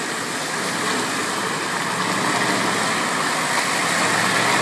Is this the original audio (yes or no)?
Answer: yes